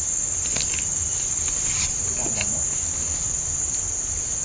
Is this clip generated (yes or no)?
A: no